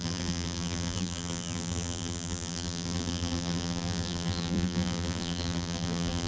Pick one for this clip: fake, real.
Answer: fake